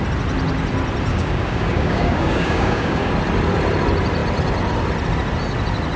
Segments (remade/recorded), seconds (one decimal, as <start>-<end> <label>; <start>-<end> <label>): 0.0-1.1 recorded; 1.1-3.1 remade; 3.1-6.0 recorded